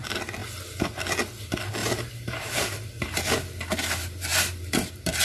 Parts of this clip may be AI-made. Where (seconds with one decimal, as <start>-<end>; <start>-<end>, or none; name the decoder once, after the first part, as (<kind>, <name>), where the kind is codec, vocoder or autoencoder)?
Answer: 1.8-3.3 (vocoder, BigVGAN v2)